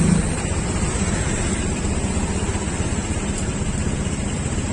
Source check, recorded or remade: recorded